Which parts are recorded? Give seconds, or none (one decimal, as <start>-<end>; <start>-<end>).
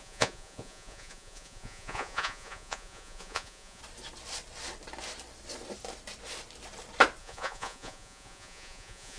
3.8-7.2